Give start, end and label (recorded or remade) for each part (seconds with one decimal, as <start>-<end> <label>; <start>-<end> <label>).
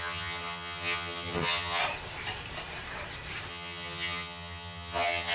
0.0-1.8 remade; 1.8-3.5 recorded; 3.5-5.3 remade